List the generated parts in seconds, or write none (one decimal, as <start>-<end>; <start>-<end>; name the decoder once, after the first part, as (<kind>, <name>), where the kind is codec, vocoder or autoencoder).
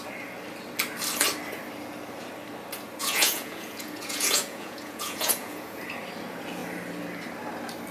3.0-5.8 (vocoder, Vocos)